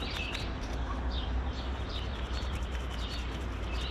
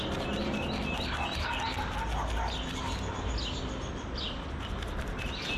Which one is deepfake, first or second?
first